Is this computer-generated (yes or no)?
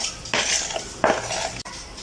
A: no